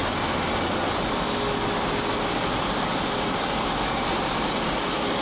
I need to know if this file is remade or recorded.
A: recorded